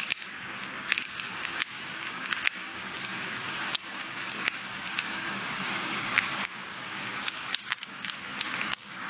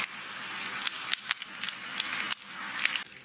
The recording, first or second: second